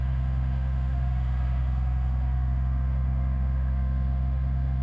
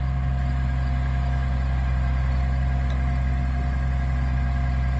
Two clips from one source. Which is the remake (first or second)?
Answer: first